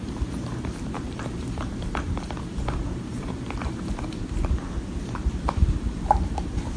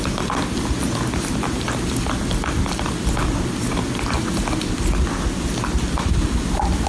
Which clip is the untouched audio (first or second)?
second